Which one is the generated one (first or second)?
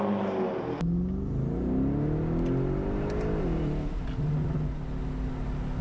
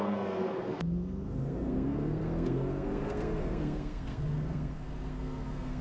second